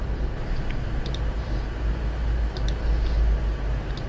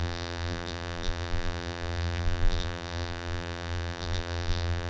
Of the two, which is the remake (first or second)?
second